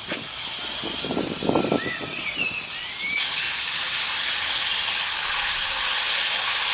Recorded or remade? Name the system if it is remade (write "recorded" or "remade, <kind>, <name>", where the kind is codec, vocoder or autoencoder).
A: recorded